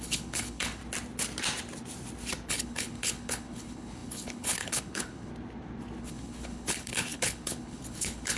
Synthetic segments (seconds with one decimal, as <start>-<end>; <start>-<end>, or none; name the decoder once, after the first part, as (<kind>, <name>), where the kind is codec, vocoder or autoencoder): 0.0-0.8 (codec, HILCodec); 2.5-5.3; 6.0-8.4